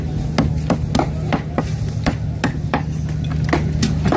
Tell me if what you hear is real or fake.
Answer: real